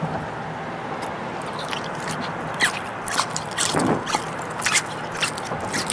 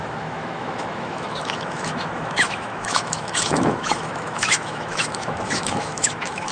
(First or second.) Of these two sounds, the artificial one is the second